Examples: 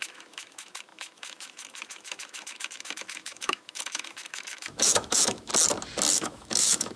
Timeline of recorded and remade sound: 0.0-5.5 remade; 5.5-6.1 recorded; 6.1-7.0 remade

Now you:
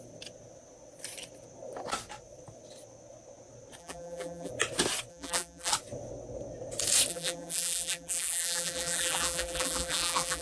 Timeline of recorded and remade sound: 0.0-3.8 recorded; 3.8-4.5 remade; 4.5-5.1 recorded; 5.1-5.7 remade; 5.7-7.1 recorded; 7.1-10.4 remade

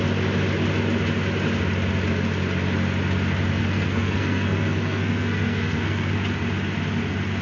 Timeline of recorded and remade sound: 0.0-3.6 recorded; 3.6-6.1 remade; 6.1-7.4 recorded

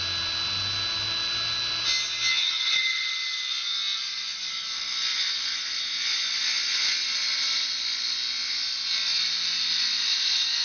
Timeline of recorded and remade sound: 0.0-2.4 recorded; 2.4-3.1 remade; 3.1-10.6 recorded